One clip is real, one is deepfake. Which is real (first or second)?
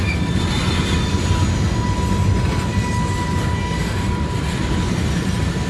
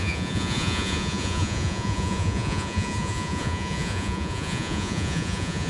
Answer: first